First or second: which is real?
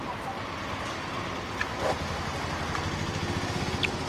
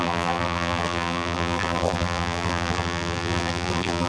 first